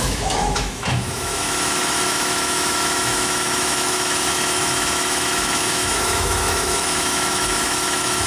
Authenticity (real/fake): fake